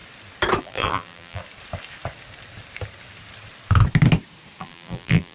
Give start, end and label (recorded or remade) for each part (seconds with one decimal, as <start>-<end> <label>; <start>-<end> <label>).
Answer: 0.0-0.6 recorded; 0.6-1.4 remade; 1.4-4.6 recorded; 4.6-5.3 remade